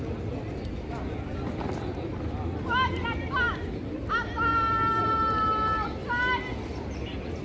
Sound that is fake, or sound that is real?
real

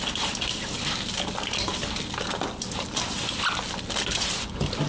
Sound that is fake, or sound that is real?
real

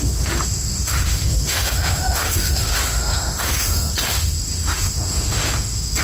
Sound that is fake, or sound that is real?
fake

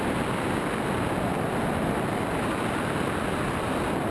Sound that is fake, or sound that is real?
real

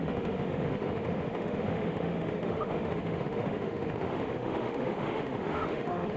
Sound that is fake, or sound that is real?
fake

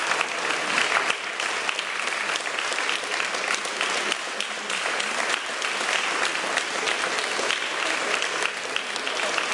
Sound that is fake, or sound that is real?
real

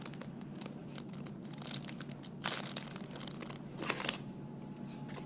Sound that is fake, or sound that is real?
real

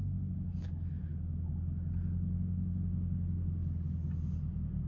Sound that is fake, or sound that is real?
real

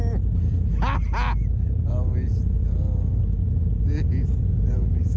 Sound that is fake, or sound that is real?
real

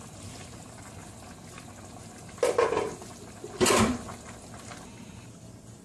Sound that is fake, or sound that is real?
real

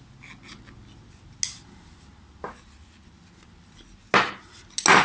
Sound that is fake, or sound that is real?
real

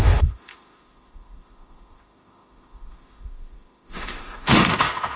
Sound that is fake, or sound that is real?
fake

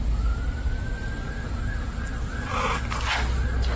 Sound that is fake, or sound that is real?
real